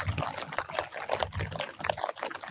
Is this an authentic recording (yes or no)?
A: yes